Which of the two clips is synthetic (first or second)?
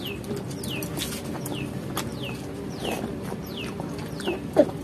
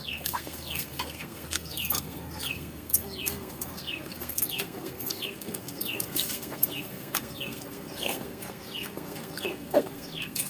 second